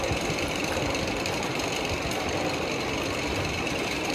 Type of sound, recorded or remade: remade